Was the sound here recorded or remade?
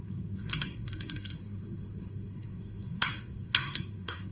remade